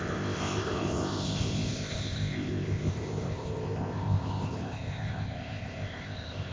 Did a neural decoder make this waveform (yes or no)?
yes